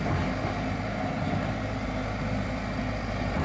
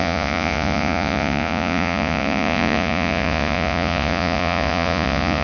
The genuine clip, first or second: first